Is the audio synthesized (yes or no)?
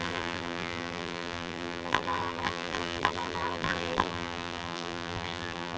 yes